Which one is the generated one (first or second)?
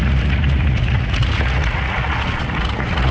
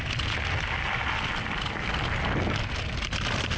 first